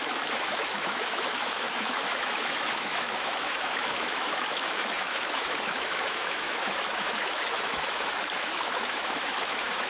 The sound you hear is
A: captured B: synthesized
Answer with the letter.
B